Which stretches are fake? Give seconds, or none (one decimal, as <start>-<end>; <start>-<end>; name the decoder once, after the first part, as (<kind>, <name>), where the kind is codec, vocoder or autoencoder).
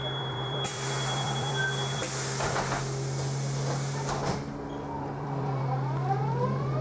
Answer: 0.0-2.0 (vocoder, BigVGAN v2); 5.0-6.8